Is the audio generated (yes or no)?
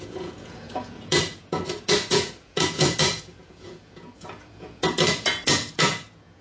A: yes